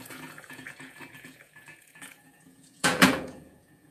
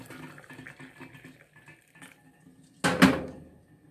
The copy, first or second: first